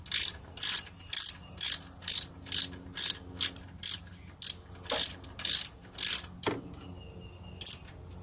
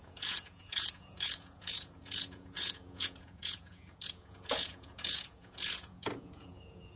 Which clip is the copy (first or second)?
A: second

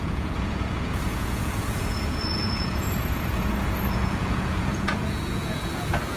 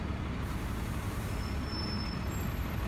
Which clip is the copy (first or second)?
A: first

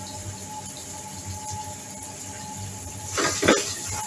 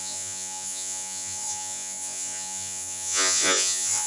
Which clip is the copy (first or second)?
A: second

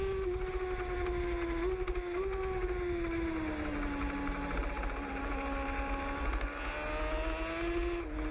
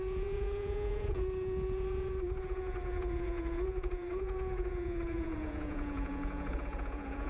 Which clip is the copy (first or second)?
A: second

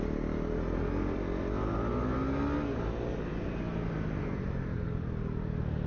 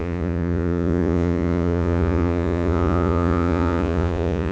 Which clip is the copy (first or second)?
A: second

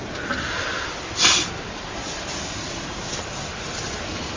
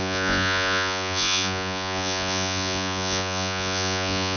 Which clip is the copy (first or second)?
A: second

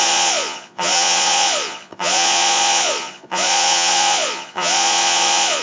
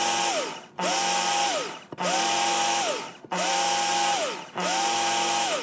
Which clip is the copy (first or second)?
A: first